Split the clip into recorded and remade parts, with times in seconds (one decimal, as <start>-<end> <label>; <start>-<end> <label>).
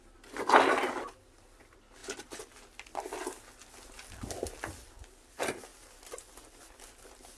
0.0-7.4 recorded